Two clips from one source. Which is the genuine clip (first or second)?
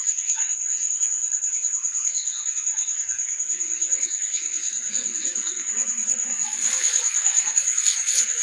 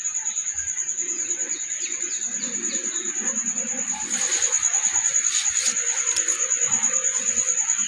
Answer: second